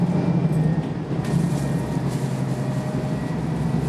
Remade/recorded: recorded